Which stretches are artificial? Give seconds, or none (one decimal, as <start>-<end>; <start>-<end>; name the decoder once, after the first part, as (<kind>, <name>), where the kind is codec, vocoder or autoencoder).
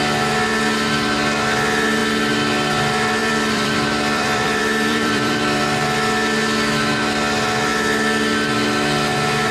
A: 3.2-5.6 (vocoder, BigVGAN v2)